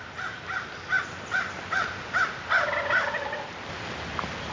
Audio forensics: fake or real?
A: real